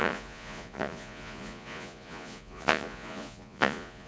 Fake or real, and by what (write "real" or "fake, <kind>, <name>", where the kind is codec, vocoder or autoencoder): fake, vocoder, Vocos